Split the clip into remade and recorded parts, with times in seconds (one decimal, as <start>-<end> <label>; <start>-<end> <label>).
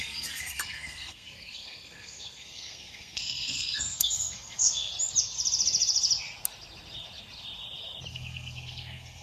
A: 0.0-4.9 remade; 4.9-8.1 recorded; 8.1-9.2 remade